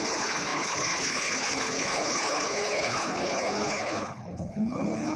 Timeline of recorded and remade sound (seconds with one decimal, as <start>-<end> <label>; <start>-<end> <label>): 0.0-5.2 remade